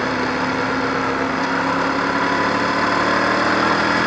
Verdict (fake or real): real